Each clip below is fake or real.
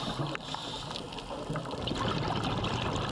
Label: real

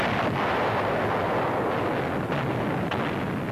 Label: real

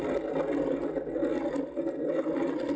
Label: real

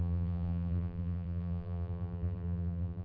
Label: fake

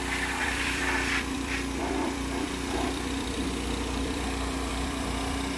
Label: fake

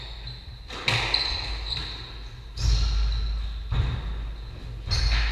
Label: real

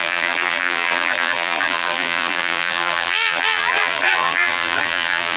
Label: fake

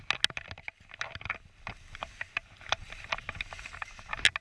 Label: real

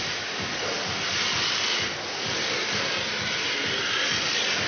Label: real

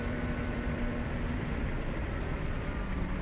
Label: fake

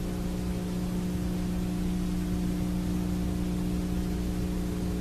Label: real